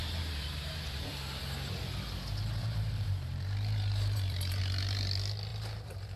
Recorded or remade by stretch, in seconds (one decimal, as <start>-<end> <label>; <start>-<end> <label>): 0.0-1.4 remade; 1.4-2.6 recorded; 2.6-4.6 remade; 4.6-5.5 recorded; 5.5-6.2 remade